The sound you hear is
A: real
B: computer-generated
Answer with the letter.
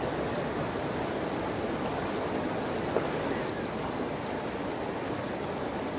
A